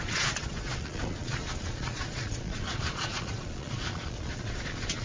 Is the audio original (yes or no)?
no